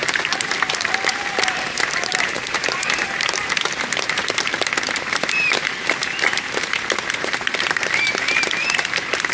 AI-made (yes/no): yes